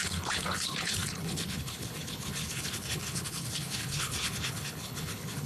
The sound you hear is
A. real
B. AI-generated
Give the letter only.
B